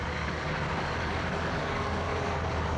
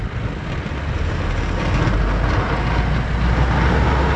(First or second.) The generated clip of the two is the first